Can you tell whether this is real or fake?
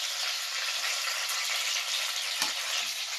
real